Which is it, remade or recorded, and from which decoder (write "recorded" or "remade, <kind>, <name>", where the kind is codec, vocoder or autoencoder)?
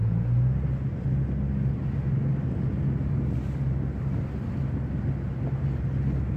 recorded